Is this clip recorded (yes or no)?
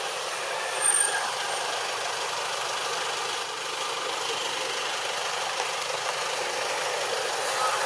yes